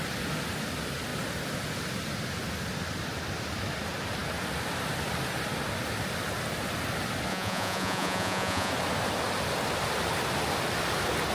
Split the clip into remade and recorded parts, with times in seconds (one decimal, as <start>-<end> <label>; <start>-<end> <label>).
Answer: 0.0-7.3 recorded; 7.3-8.7 remade; 8.7-11.3 recorded